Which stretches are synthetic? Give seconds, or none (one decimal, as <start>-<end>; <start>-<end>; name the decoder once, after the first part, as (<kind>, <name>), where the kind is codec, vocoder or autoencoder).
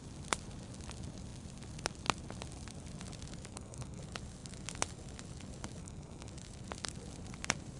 3.5-4.0 (codec, SNAC); 5.8-6.3